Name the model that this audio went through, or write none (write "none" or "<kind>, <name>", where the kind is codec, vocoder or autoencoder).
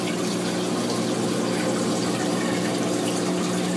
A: none